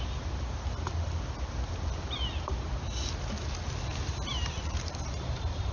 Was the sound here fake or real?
real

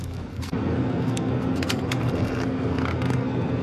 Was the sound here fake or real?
fake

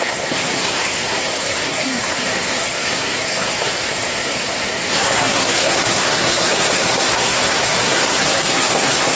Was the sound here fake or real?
fake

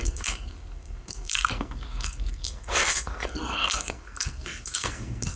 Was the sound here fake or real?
fake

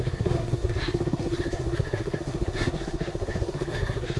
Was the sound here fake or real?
fake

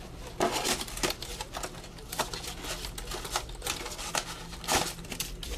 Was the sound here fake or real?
real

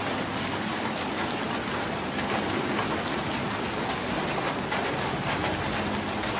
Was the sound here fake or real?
real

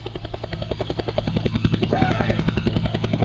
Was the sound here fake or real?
fake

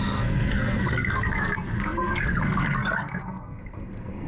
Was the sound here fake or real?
fake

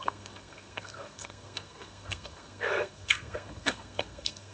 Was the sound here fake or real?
fake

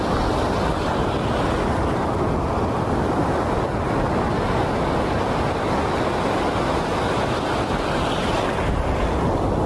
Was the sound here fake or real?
real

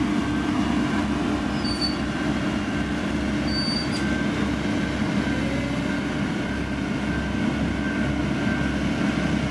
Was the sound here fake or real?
real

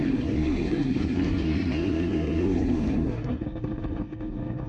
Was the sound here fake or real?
fake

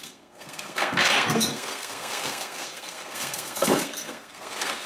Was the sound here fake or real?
fake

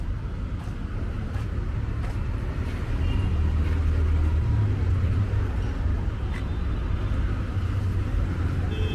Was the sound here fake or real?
real